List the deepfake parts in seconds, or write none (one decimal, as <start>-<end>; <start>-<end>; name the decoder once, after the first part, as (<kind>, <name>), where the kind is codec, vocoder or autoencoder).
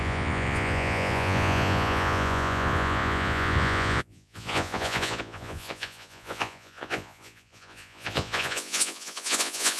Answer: 0.0-9.8 (vocoder, Vocos)